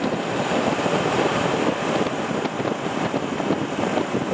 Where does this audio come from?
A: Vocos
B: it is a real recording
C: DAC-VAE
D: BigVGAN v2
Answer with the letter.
B